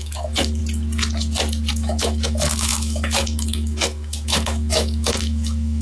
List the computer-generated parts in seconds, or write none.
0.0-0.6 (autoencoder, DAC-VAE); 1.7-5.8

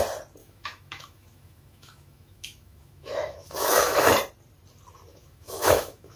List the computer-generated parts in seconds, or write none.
0.4-4.1 (autoencoder, DAC-VAE); 5.1-6.2